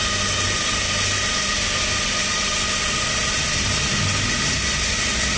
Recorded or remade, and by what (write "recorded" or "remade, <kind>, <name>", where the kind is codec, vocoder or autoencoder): recorded